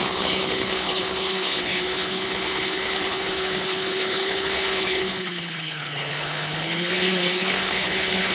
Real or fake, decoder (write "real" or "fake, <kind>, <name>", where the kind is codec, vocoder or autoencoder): fake, codec, HILCodec